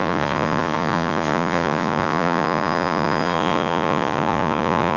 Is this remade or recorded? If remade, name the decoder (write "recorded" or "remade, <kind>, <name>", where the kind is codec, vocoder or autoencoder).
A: remade, vocoder, Vocos